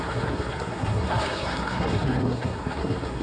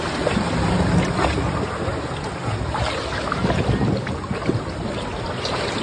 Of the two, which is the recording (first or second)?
second